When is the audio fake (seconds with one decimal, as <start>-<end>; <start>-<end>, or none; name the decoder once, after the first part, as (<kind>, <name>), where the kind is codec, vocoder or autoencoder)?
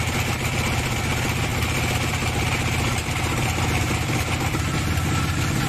none